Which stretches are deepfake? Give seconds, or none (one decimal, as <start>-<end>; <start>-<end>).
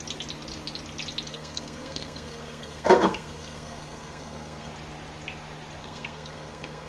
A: 1.3-4.7; 5.8-6.9